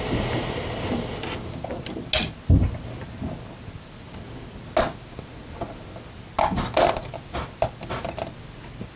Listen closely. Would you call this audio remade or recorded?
recorded